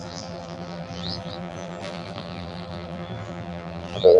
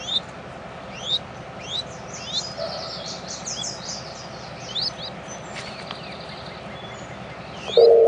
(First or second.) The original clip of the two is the second